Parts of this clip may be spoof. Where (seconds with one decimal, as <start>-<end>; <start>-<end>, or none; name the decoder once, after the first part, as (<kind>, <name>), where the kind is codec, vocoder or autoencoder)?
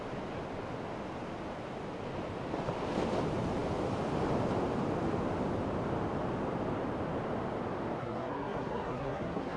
8.0-9.6 (codec, SNAC)